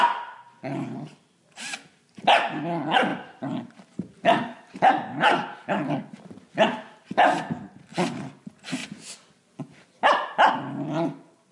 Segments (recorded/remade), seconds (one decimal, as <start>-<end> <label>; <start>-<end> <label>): 0.0-11.5 recorded